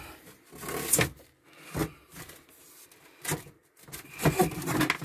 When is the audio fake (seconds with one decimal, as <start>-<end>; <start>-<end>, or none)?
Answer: none